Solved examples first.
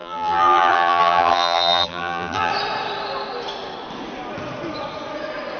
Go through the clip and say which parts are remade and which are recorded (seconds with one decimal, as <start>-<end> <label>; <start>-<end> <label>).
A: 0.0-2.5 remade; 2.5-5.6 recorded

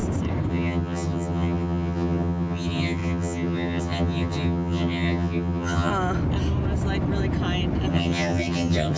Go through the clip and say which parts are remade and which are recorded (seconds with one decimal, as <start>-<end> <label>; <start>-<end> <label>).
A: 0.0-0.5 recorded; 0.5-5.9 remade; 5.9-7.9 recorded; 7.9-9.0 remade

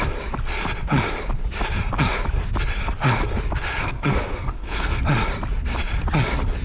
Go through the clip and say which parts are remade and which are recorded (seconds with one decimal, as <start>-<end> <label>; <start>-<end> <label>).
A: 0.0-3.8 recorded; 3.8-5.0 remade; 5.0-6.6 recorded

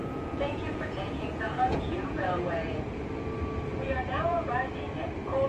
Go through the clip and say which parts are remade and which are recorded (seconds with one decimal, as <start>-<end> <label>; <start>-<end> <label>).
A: 0.0-2.8 remade; 2.8-3.7 recorded; 3.7-4.5 remade; 4.5-5.5 recorded